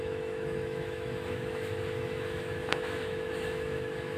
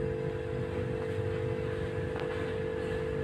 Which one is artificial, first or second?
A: first